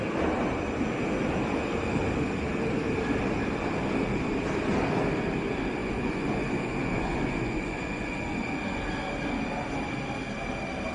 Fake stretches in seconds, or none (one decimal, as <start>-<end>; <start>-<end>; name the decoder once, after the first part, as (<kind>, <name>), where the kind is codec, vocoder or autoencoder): 5.8-8.8 (vocoder, Vocos)